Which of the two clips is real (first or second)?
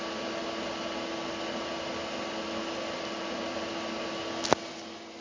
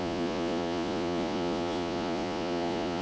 first